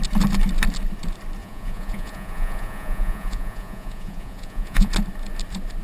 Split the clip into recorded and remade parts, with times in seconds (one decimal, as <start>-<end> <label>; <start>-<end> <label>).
0.0-1.4 recorded; 1.4-4.9 remade; 4.9-5.8 recorded